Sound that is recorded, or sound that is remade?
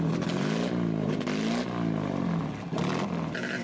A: recorded